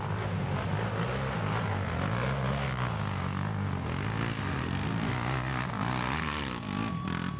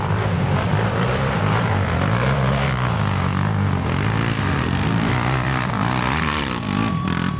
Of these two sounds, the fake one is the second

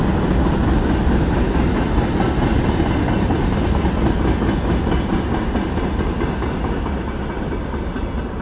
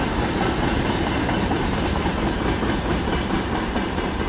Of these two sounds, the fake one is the second